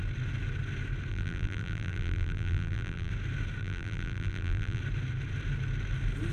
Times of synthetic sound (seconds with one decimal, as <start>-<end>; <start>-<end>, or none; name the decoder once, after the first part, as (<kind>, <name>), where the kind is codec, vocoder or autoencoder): 1.1-3.1 (vocoder, BigVGAN v2); 3.6-4.8